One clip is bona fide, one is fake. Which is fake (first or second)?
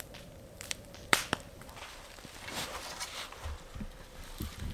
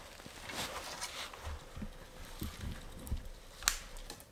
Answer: first